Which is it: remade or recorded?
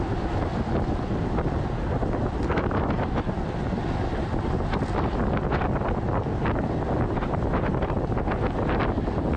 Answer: recorded